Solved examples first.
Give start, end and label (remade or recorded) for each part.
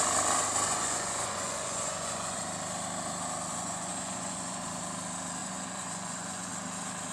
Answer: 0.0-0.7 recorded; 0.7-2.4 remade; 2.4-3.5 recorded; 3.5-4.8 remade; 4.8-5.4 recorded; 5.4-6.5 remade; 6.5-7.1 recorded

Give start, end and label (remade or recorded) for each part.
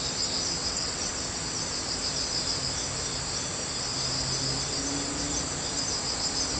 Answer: 0.0-0.6 recorded; 0.6-1.1 remade; 1.1-6.6 recorded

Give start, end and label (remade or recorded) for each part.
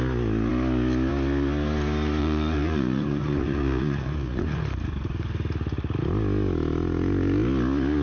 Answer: 0.0-2.2 recorded; 2.2-4.6 remade; 4.6-8.0 recorded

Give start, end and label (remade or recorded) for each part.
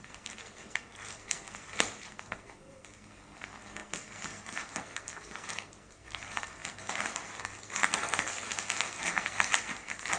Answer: 0.0-10.2 remade